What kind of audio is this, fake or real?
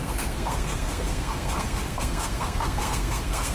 fake